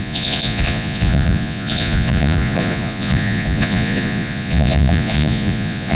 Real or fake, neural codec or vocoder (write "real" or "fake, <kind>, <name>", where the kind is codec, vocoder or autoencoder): fake, vocoder, Vocos